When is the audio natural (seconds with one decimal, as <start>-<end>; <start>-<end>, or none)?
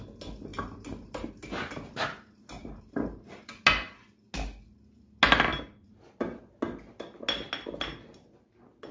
0.0-0.5; 1.3-2.6; 3.6-5.5; 6.2-8.9